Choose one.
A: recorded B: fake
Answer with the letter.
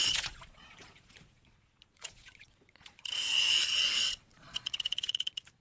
B